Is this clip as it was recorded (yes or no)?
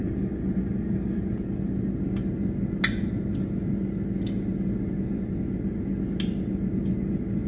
yes